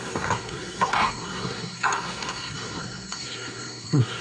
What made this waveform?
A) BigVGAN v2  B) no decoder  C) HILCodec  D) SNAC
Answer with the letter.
D